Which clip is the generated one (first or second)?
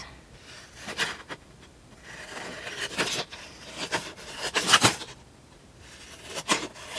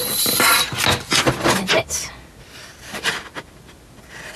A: first